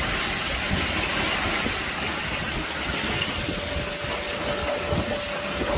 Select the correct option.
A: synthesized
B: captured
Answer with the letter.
B